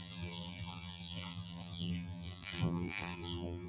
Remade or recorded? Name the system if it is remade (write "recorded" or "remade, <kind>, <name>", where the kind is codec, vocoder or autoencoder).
remade, vocoder, BigVGAN v2